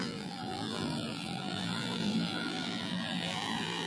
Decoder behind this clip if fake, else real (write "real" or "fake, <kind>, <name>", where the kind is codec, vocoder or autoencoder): fake, vocoder, BigVGAN v2